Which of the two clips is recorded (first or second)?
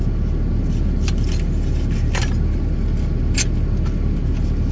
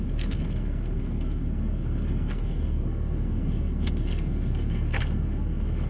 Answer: first